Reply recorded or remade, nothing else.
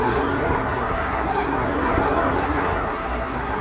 remade